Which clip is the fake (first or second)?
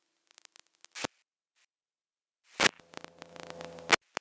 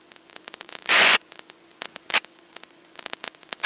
second